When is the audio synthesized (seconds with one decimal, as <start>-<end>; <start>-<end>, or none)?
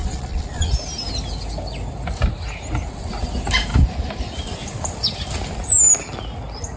0.0-0.7